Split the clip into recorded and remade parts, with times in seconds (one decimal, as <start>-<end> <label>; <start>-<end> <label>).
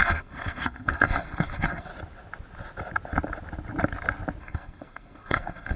0.0-1.9 remade; 1.9-4.4 recorded; 4.4-5.8 remade